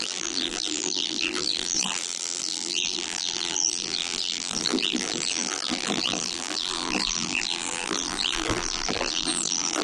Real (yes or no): no